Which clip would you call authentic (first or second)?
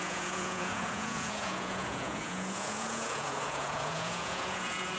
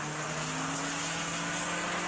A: second